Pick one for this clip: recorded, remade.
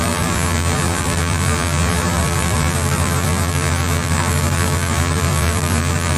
remade